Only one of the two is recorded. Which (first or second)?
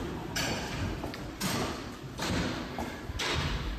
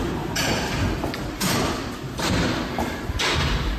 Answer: second